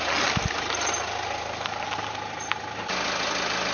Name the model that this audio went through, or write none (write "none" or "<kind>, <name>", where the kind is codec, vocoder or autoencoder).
none